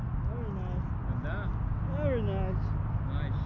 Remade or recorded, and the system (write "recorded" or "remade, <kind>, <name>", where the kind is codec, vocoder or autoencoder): recorded